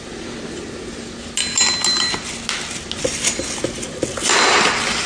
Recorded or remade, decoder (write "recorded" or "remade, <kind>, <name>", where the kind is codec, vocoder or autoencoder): recorded